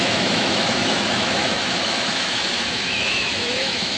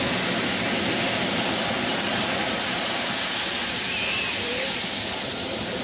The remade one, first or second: first